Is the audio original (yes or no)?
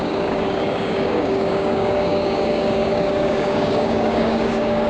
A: no